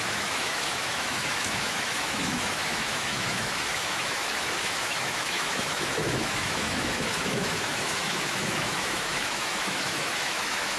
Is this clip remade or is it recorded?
remade